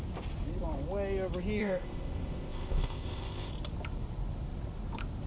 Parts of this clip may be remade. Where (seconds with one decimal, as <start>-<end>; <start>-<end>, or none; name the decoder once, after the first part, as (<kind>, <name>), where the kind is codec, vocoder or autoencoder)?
1.6-3.5 (codec, ZipCodec)